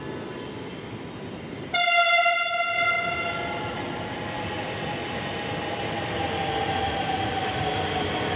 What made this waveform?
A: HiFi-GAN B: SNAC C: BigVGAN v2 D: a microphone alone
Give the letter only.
D